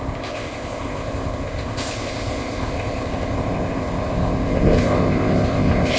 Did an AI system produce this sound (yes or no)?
yes